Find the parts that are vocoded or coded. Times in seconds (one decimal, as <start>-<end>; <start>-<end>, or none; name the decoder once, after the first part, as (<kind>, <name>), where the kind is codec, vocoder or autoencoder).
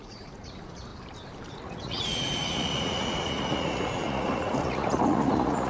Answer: 0.0-0.9 (vocoder, Vocos); 1.5-5.7